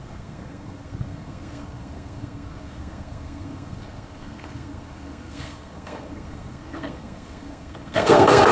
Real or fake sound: fake